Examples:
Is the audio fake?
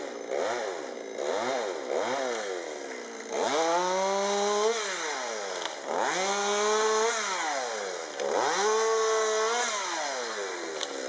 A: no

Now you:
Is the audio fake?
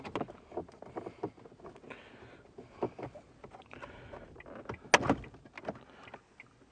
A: no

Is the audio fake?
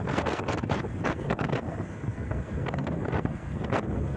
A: yes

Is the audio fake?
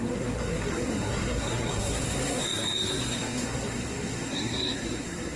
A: yes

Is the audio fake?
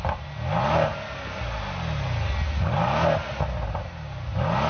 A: no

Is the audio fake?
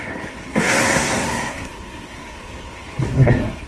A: yes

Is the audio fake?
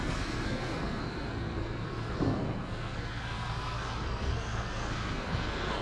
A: yes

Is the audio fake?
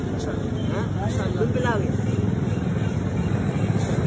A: no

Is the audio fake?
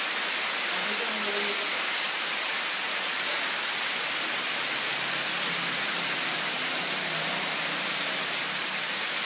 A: no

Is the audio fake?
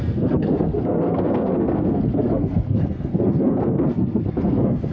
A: yes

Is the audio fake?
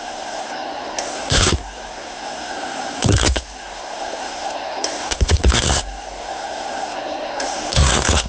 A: yes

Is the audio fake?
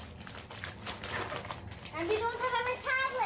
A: no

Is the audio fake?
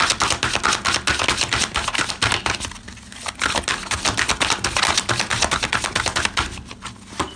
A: no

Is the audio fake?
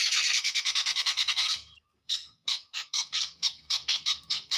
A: yes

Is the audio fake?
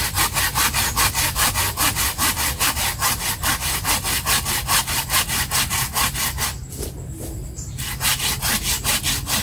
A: no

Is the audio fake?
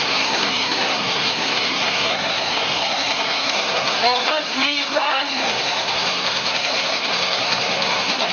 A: yes